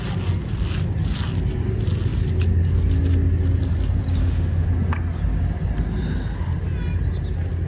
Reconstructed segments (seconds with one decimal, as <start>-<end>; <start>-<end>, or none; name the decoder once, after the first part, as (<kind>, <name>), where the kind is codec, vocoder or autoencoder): 4.2-4.7 (autoencoder, DAC-VAE)